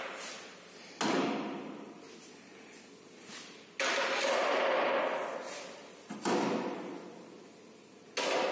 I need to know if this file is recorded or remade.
recorded